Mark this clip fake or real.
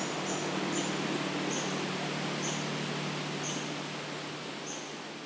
real